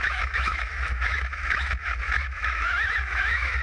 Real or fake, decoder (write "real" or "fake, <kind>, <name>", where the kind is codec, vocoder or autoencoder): fake, autoencoder, DAC-VAE